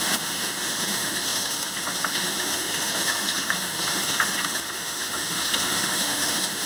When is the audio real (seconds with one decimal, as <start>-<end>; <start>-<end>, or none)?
none